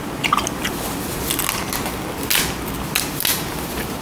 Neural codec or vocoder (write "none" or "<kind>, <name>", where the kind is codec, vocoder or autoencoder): none